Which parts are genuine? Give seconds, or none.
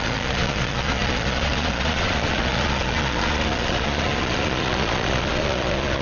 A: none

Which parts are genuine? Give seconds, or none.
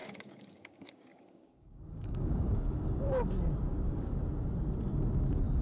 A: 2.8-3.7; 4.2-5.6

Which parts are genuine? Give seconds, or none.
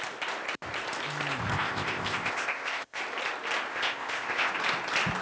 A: 0.0-1.5; 3.0-3.7; 4.5-5.2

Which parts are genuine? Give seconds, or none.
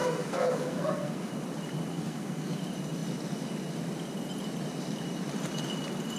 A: 1.3-1.9; 2.6-6.2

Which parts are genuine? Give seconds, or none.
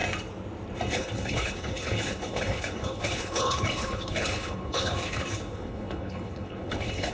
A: 0.0-0.9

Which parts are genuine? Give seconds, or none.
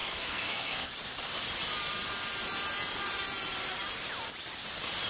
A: 0.9-5.1